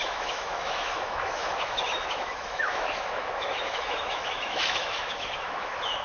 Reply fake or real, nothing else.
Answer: fake